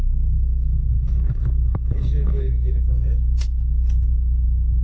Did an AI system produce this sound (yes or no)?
yes